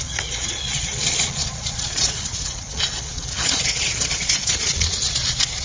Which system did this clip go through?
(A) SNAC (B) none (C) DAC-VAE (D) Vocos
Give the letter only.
D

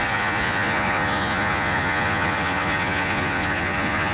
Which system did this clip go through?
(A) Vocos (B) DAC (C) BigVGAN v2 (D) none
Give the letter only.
A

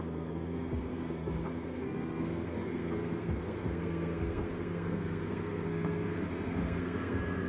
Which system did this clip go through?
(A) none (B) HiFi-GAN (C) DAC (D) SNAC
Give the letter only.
D